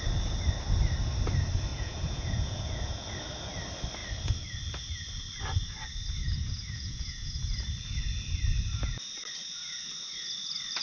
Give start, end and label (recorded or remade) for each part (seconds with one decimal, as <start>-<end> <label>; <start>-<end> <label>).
0.0-1.7 recorded; 1.7-3.1 remade; 3.1-6.2 recorded; 6.2-7.4 remade; 7.4-10.8 recorded